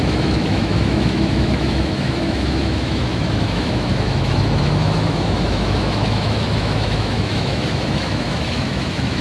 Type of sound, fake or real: fake